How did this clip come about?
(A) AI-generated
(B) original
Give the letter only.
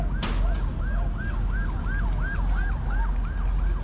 B